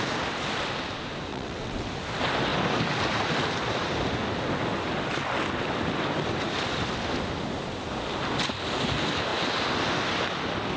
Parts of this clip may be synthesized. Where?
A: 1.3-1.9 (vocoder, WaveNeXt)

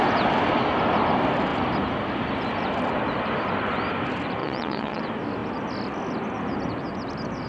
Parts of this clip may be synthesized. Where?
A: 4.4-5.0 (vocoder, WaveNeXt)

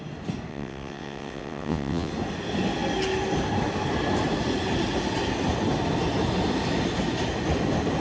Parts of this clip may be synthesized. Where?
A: 0.5-2.1 (vocoder, WaveNeXt)

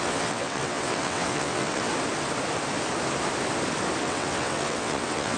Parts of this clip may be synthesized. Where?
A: 0.0-1.9 (vocoder, WaveNeXt); 4.0-5.4